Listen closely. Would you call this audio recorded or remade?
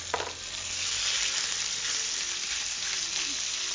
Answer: recorded